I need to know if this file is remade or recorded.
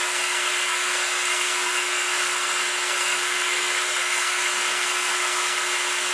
remade